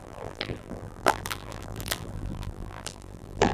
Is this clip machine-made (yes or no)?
yes